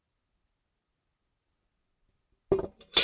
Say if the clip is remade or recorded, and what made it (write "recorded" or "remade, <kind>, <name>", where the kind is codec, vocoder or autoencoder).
recorded